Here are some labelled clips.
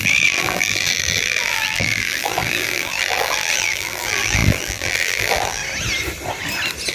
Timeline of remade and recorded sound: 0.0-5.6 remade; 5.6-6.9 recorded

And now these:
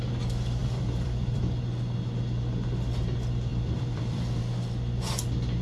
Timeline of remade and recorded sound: 0.0-0.6 recorded; 0.6-1.4 remade; 1.4-3.5 recorded; 3.5-4.4 remade; 4.4-5.6 recorded

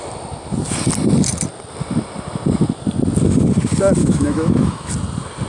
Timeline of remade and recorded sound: 0.0-4.0 recorded; 4.0-4.9 remade; 4.9-5.5 recorded

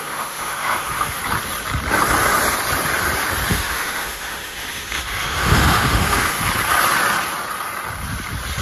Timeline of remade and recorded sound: 0.0-1.2 remade; 1.2-3.5 recorded; 3.5-6.4 remade; 6.4-8.6 recorded

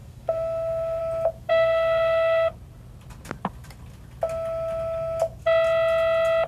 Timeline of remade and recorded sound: 0.0-1.0 remade; 1.0-1.5 recorded; 1.5-2.5 remade; 2.5-6.5 recorded

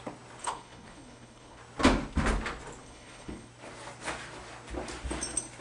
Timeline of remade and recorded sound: 0.0-0.4 recorded; 0.4-1.6 remade; 1.6-2.8 recorded; 2.8-3.5 remade; 3.5-5.6 recorded